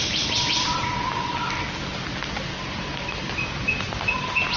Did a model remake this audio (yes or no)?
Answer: no